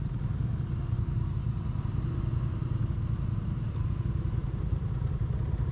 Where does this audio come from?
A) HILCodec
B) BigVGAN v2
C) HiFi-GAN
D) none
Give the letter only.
B